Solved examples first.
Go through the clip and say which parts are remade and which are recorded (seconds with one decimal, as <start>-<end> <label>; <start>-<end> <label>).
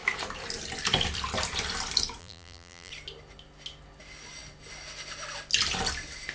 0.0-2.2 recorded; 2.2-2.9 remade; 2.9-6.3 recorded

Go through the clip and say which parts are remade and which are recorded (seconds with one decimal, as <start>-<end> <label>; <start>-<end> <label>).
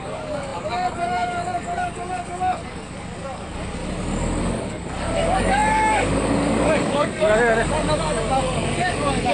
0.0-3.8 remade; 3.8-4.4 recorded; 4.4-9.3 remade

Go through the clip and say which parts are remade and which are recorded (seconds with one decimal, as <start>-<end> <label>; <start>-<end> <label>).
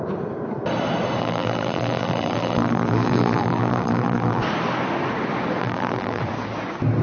0.0-1.2 recorded; 1.2-4.4 remade; 4.4-5.6 recorded; 5.6-6.2 remade; 6.2-7.0 recorded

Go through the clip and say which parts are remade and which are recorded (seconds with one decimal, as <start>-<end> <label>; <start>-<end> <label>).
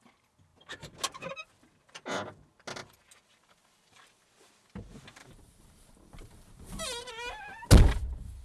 0.0-5.2 recorded; 5.2-7.1 remade; 7.1-8.4 recorded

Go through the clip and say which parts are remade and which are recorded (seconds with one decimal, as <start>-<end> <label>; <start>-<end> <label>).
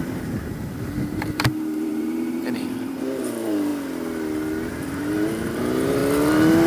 0.0-3.7 remade; 3.7-4.7 recorded; 4.7-6.0 remade; 6.0-6.7 recorded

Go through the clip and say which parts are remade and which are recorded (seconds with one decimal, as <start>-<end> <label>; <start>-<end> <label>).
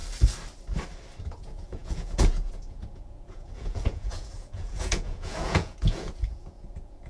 0.0-1.2 recorded; 1.2-7.1 remade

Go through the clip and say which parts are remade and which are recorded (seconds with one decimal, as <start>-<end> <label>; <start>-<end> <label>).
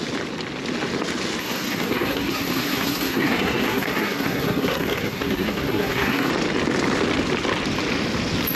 0.0-1.4 recorded; 1.4-6.3 remade; 6.3-8.5 recorded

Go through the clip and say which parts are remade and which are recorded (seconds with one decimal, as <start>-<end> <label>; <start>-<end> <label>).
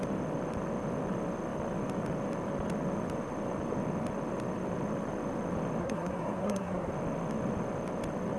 0.0-5.8 recorded; 5.8-6.9 remade; 6.9-8.4 recorded